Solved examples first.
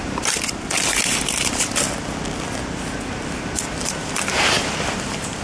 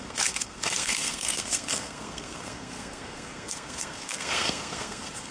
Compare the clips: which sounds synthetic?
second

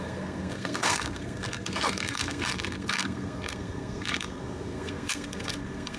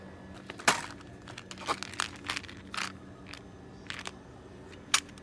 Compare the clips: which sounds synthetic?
first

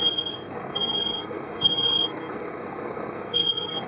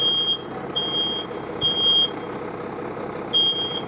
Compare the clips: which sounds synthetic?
first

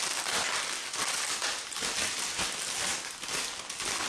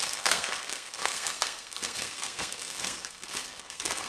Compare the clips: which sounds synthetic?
second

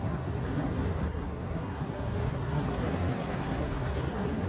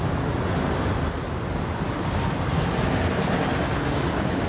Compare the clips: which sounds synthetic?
first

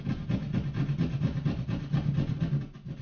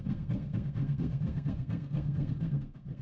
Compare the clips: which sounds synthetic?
second